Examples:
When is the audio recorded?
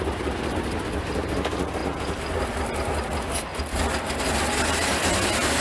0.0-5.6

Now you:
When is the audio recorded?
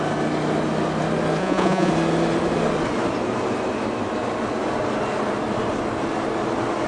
0.0-1.4; 1.9-6.9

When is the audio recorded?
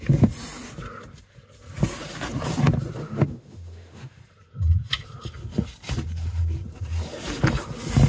0.0-3.0; 4.2-8.1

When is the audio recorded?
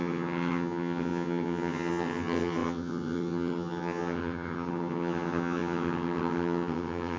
none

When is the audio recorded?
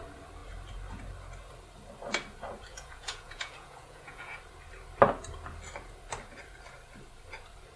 0.0-2.7; 4.4-7.8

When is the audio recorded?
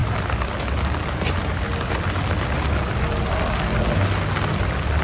0.0-5.0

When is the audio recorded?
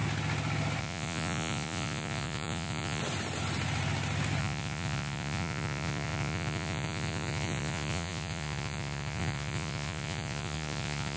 0.0-0.8; 3.0-4.4